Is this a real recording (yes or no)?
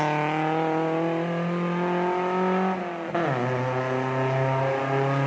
yes